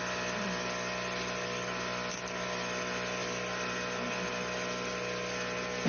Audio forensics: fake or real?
real